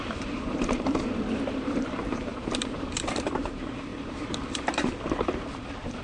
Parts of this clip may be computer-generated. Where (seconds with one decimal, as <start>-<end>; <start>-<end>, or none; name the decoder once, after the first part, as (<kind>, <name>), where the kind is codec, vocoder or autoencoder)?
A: 0.0-6.0 (vocoder, BigVGAN v2)